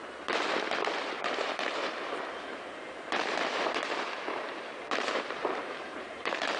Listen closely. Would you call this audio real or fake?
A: fake